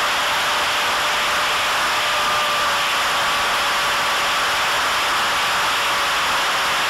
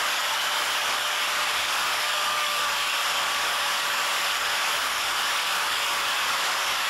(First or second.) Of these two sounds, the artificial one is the second